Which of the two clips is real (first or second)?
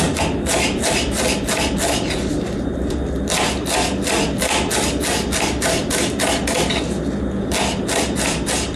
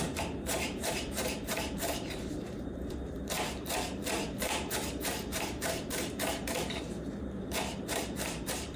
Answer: first